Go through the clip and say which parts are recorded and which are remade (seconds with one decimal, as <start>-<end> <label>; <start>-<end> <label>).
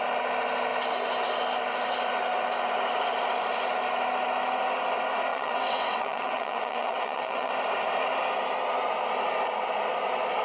0.0-5.3 recorded; 5.3-7.5 remade; 7.5-10.4 recorded